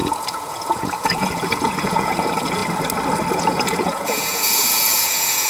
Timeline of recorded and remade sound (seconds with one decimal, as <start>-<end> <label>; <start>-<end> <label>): 0.0-2.6 remade; 2.6-3.3 recorded; 3.3-5.5 remade